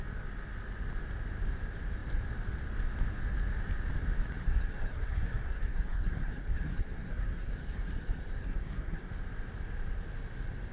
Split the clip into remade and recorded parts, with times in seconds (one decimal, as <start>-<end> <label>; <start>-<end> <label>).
0.0-4.4 recorded; 4.4-9.1 remade; 9.1-10.7 recorded